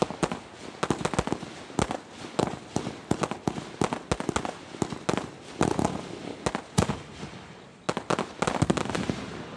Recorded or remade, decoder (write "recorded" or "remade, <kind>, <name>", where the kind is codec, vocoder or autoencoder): recorded